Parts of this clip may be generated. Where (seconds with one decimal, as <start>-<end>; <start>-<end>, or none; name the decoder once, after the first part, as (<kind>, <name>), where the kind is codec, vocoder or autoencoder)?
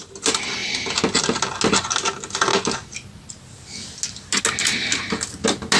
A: none